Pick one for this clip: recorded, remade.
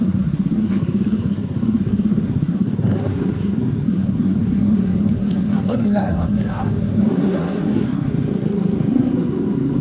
remade